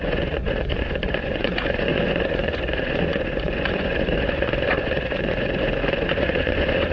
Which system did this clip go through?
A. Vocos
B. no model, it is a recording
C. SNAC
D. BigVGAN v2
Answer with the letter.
A